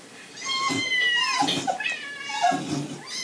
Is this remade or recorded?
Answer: recorded